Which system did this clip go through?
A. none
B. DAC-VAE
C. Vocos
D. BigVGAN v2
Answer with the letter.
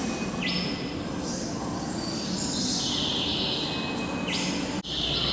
A